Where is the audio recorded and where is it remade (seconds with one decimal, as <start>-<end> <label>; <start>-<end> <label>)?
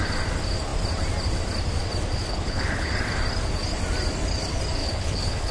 0.0-2.3 recorded; 2.3-2.9 remade; 2.9-4.8 recorded; 4.8-5.5 remade